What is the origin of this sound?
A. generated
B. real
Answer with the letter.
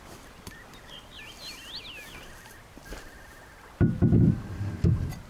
B